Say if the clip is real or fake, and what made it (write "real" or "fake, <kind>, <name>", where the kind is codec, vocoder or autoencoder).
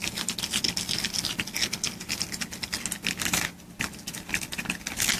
real